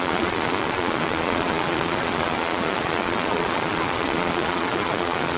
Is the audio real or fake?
fake